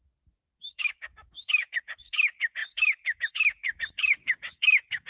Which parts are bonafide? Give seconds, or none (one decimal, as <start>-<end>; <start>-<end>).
none